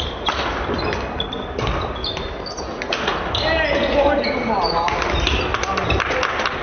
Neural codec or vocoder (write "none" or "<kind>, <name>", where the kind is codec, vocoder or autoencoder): none